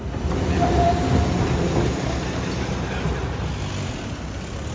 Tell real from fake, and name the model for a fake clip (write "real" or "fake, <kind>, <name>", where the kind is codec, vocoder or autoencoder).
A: real